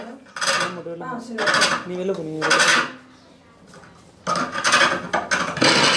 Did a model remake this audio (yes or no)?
no